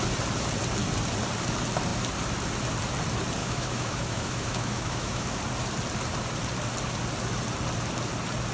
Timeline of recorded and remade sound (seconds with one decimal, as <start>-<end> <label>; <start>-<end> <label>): 0.0-3.4 recorded; 3.4-5.4 remade; 5.4-8.5 recorded